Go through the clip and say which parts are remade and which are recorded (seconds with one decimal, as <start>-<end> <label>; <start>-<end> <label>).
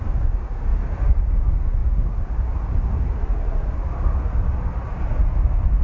0.0-5.8 recorded